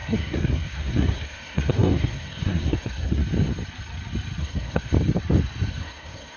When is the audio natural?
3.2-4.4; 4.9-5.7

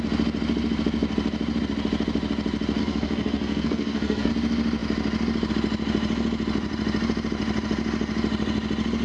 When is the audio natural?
0.0-2.8; 4.3-9.0

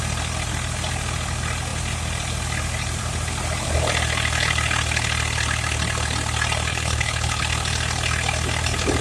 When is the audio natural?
0.0-6.7; 7.4-9.0

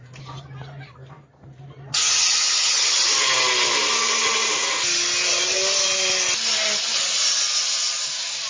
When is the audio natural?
0.0-1.9; 3.1-8.5